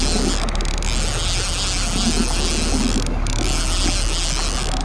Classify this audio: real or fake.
real